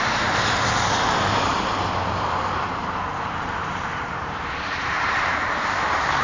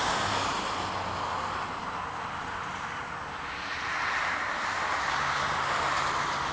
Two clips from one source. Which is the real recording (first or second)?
second